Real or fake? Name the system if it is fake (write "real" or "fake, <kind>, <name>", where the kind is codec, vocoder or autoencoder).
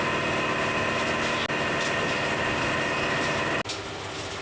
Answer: real